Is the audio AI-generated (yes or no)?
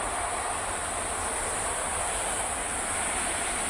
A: no